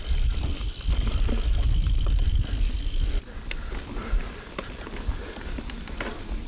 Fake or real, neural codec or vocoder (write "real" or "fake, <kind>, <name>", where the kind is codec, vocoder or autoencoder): real